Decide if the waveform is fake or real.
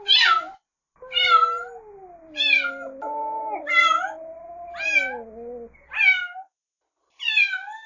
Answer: real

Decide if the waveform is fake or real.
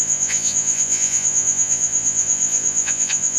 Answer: fake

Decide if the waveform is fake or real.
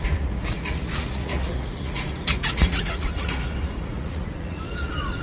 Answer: fake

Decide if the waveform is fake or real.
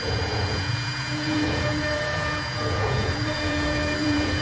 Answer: fake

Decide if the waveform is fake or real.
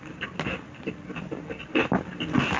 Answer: real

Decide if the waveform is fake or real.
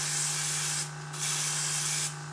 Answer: real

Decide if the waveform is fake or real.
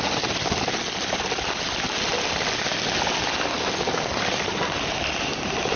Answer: real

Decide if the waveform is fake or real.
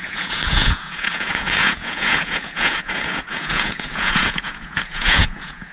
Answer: fake